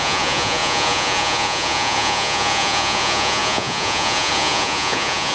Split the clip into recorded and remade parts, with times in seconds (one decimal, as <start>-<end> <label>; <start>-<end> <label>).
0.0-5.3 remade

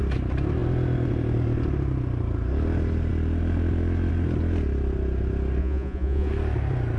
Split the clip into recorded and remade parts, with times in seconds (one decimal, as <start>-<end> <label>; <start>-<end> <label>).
0.0-5.6 recorded; 5.6-6.3 remade; 6.3-7.0 recorded

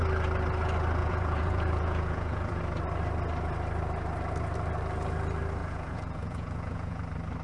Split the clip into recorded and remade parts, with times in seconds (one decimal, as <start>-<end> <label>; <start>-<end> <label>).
0.0-1.0 recorded; 1.0-2.6 remade; 2.6-5.6 recorded; 5.6-7.0 remade; 7.0-7.4 recorded

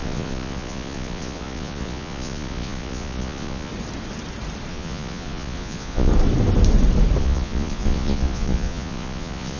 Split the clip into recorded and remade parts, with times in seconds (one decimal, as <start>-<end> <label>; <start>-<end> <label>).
0.0-3.7 remade; 3.7-4.7 recorded; 4.7-6.1 remade; 6.1-7.2 recorded; 7.2-9.6 remade

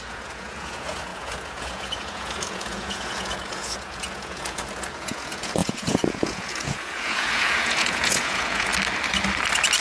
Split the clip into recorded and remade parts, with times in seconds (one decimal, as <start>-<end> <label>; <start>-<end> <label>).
0.0-8.7 remade; 8.7-9.8 recorded